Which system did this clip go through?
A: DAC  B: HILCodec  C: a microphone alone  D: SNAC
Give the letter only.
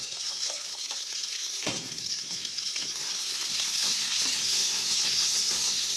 D